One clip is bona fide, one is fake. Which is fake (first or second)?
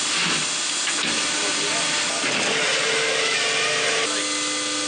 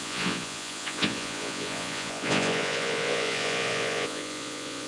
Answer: second